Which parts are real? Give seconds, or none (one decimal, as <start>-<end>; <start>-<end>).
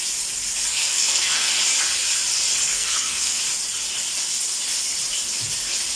0.0-0.8; 1.5-2.7; 3.4-6.0